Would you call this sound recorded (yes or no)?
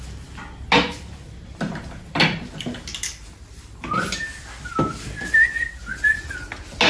yes